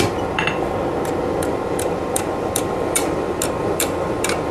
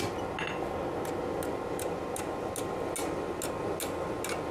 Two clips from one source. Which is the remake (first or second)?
first